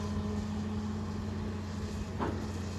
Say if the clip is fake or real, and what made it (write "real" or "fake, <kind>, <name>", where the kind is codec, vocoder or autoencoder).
real